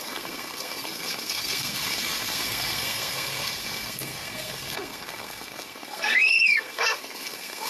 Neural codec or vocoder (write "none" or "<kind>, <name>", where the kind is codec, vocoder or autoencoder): codec, SNAC